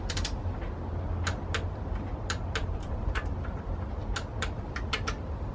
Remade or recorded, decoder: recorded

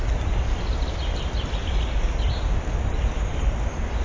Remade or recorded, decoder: recorded